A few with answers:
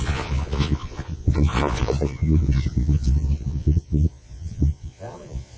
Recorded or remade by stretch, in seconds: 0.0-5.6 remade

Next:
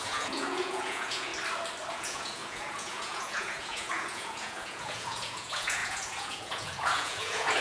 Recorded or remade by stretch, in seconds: 0.0-1.3 remade; 1.3-1.9 recorded; 1.9-7.6 remade

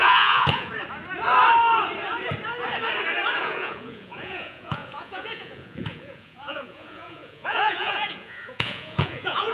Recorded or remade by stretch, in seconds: 0.0-0.7 remade; 0.7-3.4 recorded; 3.4-9.5 remade

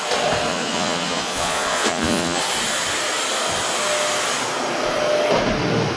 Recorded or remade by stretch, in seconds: 0.0-0.5 recorded; 0.5-2.4 remade; 2.4-6.0 recorded